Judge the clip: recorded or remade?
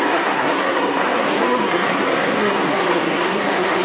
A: remade